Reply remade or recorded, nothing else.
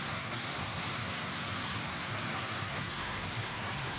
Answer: remade